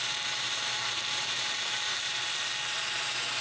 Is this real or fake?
fake